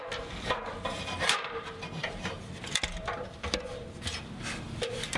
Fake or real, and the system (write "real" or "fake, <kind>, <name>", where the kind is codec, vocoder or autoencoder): fake, vocoder, BigVGAN v2